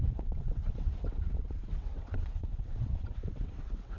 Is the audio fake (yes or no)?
yes